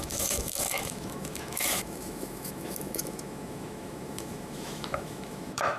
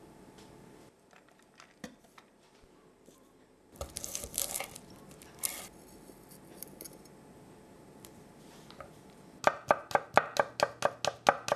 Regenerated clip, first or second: first